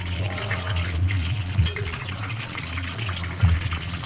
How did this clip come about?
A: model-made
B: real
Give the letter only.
A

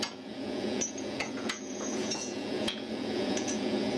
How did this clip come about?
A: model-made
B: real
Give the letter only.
A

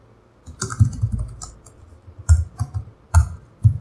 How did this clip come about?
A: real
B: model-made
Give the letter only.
A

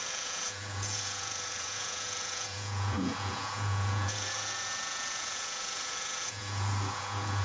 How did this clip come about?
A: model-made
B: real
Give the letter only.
A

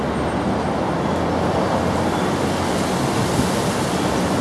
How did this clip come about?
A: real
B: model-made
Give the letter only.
A